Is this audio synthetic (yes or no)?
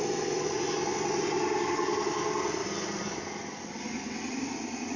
no